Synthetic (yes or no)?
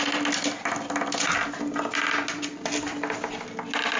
no